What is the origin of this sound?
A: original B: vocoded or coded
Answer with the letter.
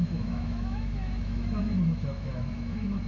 B